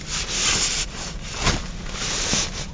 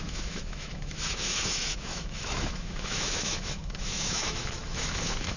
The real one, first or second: first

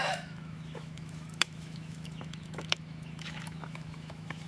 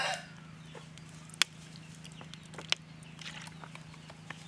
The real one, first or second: second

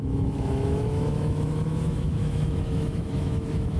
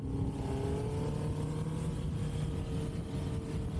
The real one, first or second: second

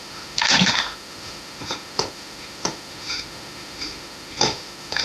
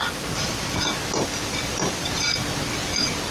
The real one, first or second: second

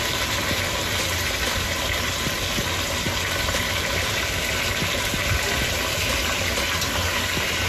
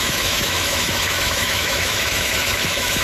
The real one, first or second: first